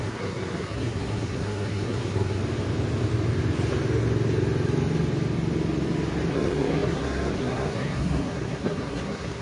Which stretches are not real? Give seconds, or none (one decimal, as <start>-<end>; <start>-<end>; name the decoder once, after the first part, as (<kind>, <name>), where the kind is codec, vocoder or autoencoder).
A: 0.0-2.4 (codec, SNAC); 6.3-9.4